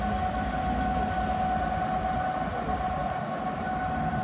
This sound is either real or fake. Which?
real